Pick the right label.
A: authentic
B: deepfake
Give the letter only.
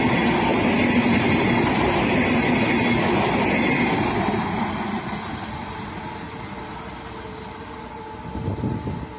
A